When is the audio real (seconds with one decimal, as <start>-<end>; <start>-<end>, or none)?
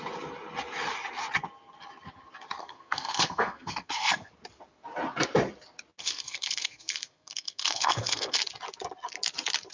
0.0-2.6; 4.3-6.0; 8.4-9.7